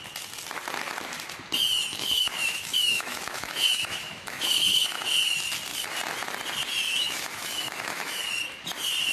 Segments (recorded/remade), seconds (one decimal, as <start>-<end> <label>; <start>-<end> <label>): 0.0-1.9 recorded; 1.9-5.1 remade; 5.1-6.9 recorded; 6.9-8.2 remade; 8.2-9.1 recorded